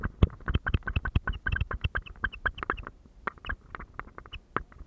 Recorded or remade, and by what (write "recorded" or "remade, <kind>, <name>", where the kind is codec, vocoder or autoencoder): recorded